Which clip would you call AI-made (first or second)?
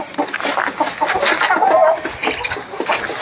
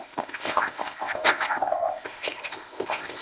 second